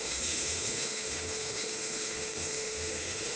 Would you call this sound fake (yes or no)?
yes